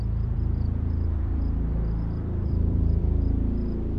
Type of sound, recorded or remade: remade